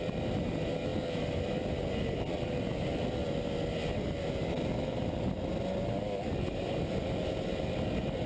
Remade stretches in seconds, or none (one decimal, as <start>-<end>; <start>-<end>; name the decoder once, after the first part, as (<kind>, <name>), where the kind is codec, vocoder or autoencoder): none